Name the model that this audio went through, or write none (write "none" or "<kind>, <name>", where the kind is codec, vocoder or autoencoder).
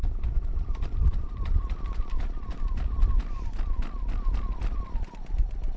none